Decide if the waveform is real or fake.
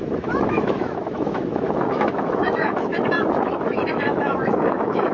fake